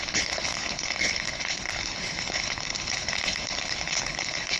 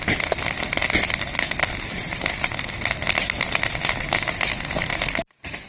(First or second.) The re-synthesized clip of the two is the first